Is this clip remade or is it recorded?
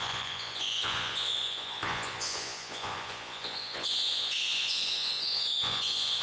remade